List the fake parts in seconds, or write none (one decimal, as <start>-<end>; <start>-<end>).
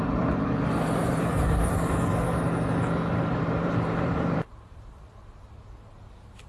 0.0-1.3; 3.1-6.5